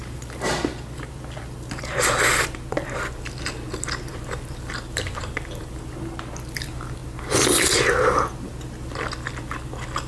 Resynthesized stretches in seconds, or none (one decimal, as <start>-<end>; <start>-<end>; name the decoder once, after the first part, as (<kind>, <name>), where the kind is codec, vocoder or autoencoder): 0.0-0.5 (vocoder, BigVGAN v2); 4.1-5.8